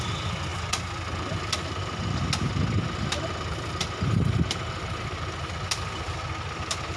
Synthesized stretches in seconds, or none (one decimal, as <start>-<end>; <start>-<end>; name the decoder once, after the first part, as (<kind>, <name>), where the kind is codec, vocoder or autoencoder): none